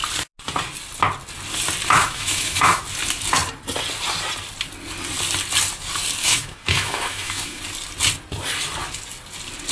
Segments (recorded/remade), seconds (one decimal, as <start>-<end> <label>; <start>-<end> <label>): 0.0-2.0 recorded; 2.0-2.8 remade; 2.8-6.2 recorded; 6.2-7.6 remade; 7.6-9.7 recorded